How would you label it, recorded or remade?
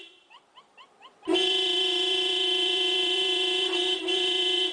remade